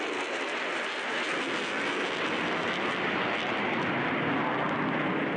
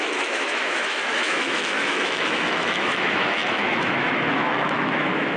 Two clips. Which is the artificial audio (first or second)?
second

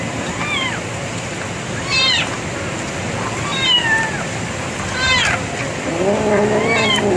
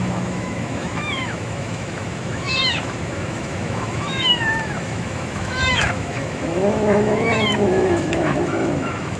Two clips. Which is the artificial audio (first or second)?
second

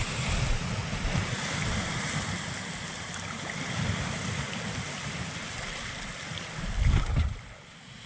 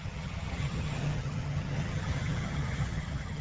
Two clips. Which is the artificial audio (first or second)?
second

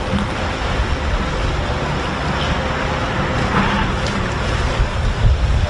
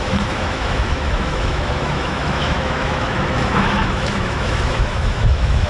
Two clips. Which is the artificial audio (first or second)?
second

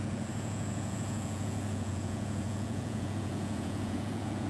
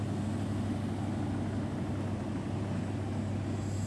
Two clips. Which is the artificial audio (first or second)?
first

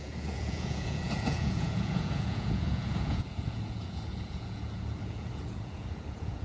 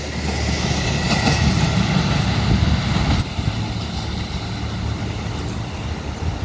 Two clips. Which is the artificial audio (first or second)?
first